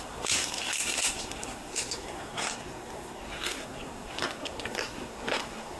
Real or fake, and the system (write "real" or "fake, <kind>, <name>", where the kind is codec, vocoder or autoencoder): fake, codec, SNAC